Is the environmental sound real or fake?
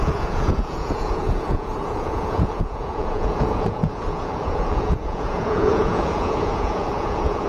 fake